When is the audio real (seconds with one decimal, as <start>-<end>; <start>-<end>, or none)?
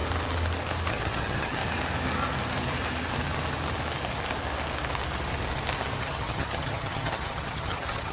0.0-0.9; 1.6-6.0